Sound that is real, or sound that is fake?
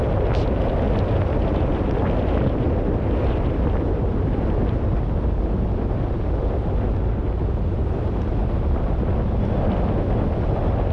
real